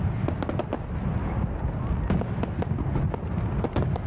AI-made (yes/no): no